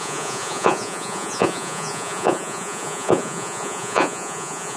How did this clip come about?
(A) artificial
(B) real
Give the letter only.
A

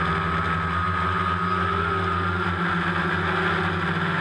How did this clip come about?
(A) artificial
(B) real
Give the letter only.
B